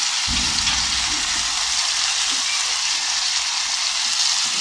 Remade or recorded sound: recorded